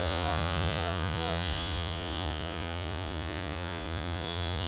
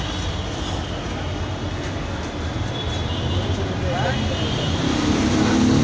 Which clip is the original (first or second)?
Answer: second